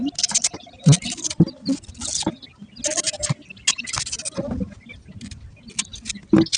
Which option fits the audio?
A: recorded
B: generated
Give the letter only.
A